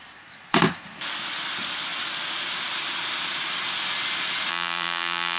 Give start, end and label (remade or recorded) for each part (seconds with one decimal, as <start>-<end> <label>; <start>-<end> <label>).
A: 0.0-4.5 recorded; 4.5-5.4 remade